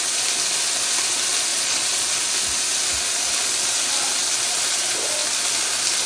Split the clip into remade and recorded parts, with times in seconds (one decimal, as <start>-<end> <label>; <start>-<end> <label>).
0.0-1.5 recorded; 1.5-2.2 remade; 2.2-6.1 recorded